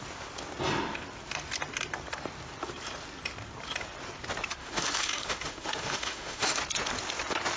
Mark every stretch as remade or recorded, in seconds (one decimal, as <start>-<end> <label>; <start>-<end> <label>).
0.0-4.6 recorded; 4.6-6.6 remade; 6.6-7.6 recorded